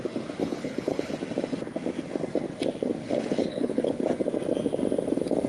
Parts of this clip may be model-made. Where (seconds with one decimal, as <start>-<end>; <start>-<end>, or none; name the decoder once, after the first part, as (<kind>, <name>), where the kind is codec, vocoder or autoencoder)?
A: 0.4-1.1 (codec, HILCodec); 3.0-4.0